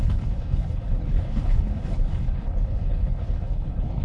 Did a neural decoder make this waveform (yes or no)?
yes